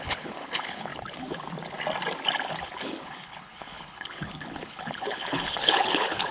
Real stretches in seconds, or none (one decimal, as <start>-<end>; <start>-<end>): 0.9-2.5